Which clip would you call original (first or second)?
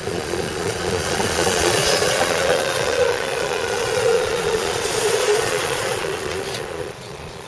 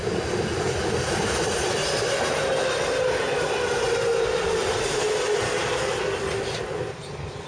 second